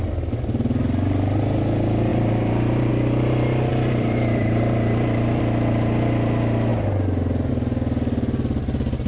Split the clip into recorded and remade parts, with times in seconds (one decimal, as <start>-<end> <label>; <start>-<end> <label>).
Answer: 0.0-2.1 recorded; 2.1-2.9 remade; 2.9-3.7 recorded; 3.7-5.4 remade; 5.4-9.1 recorded